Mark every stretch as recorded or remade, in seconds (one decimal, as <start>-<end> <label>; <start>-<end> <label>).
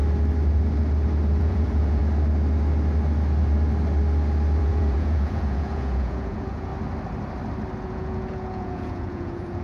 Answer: 0.0-1.4 recorded; 1.4-2.0 remade; 2.0-4.6 recorded; 4.6-6.7 remade; 6.7-7.8 recorded; 7.8-9.6 remade